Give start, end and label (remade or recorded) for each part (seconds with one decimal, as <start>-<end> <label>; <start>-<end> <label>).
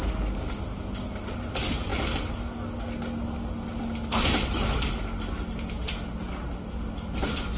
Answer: 0.0-7.6 recorded